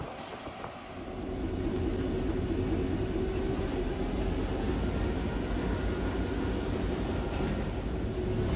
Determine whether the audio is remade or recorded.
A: recorded